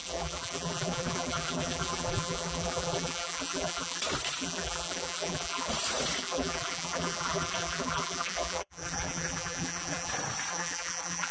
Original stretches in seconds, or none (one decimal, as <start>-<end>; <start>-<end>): 4.0-4.4; 5.7-6.2; 10.1-10.5